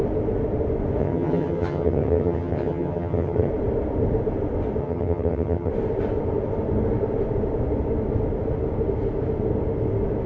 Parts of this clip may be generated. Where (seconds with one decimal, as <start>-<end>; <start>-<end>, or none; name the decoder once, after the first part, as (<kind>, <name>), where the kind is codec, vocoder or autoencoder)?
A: 1.0-3.5 (vocoder, HiFi-GAN); 4.8-5.7